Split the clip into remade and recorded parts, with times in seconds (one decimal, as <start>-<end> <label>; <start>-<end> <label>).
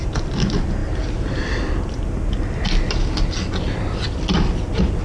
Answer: 0.0-5.0 recorded